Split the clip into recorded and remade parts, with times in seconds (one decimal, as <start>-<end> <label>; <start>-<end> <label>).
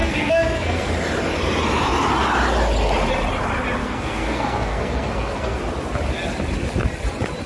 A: 0.0-0.9 remade; 0.9-3.8 recorded; 3.8-5.6 remade; 5.6-7.5 recorded